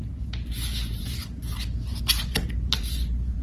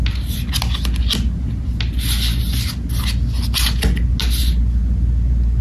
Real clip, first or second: second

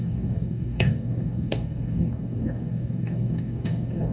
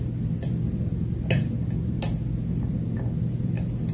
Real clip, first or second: second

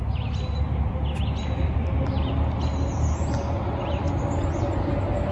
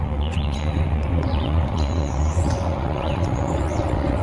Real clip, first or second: first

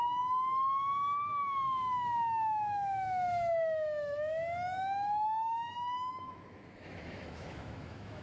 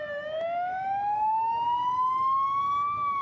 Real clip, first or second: second